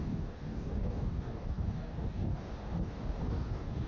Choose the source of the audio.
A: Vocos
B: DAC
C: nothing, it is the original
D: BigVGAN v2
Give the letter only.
B